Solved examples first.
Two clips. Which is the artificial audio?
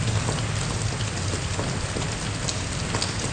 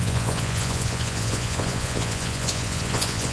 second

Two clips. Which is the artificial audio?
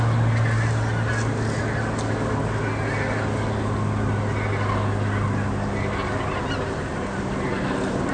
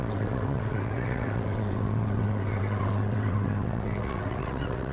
second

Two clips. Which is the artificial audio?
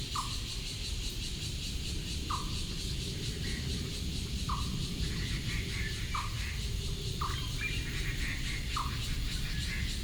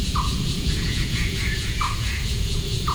second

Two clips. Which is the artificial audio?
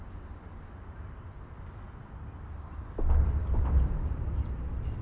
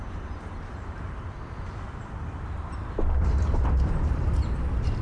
second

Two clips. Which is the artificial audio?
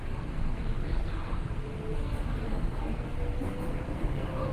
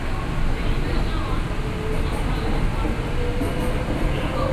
first